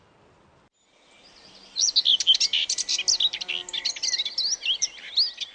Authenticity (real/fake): real